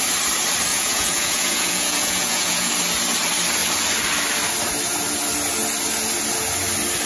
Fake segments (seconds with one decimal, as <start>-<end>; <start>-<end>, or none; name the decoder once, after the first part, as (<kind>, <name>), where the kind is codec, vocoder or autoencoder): 0.7-2.7 (vocoder, Vocos)